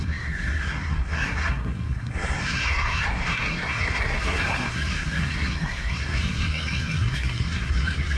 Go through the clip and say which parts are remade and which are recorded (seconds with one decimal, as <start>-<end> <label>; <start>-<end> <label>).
0.0-8.2 remade